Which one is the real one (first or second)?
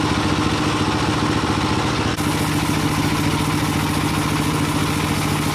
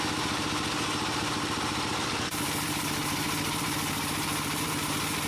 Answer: first